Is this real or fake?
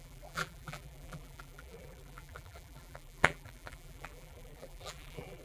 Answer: fake